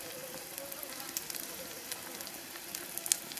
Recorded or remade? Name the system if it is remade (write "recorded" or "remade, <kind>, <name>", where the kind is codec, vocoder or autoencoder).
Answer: recorded